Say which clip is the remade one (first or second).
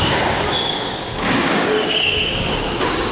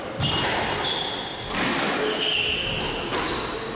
first